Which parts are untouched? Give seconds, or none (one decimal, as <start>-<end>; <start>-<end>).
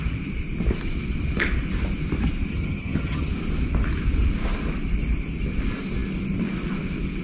0.0-2.5; 3.3-7.2